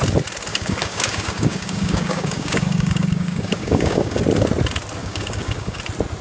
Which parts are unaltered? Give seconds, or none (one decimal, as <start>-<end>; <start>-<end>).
0.0-0.5; 4.2-5.0; 5.8-6.2